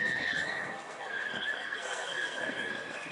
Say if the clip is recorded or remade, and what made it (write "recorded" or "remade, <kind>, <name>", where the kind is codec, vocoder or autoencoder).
remade, codec, SNAC